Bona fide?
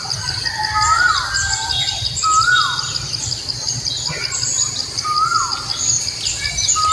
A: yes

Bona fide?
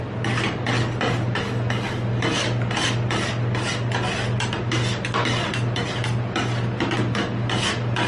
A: yes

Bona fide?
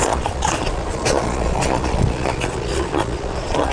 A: no